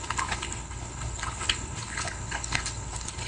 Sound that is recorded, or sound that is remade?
remade